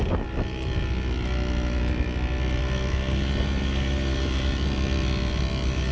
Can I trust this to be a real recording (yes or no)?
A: yes